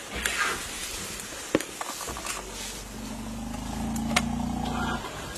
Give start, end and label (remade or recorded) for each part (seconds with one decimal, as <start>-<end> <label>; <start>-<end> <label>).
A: 0.0-5.4 recorded